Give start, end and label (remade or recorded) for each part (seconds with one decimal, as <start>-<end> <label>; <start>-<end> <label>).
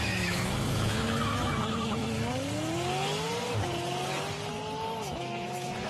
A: 0.0-2.0 remade; 2.0-5.0 recorded; 5.0-5.9 remade